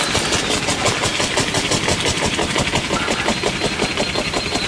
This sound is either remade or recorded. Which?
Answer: recorded